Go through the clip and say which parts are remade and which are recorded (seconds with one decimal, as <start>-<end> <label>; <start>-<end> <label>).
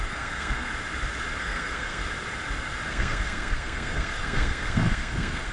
0.0-0.7 remade; 0.7-1.4 recorded; 1.4-2.0 remade; 2.0-2.9 recorded; 2.9-5.5 remade